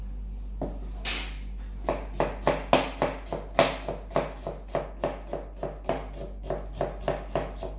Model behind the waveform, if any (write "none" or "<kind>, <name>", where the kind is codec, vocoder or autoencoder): none